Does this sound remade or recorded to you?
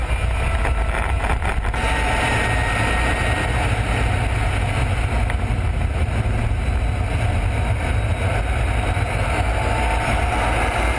recorded